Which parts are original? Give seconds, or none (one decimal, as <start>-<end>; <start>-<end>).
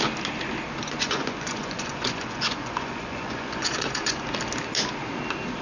0.0-0.8; 4.2-5.6